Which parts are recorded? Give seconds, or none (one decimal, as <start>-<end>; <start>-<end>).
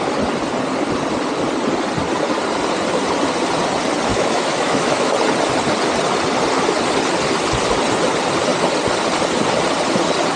0.0-4.1; 5.1-10.4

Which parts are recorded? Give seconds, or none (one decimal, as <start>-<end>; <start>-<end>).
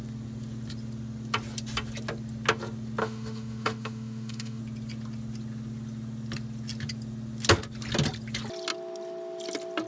0.0-3.0; 4.6-9.9